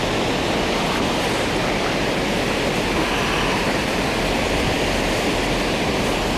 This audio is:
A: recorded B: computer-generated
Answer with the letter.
A